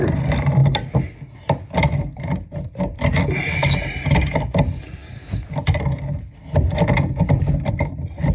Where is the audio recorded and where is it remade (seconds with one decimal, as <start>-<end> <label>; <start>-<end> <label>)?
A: 0.0-8.3 recorded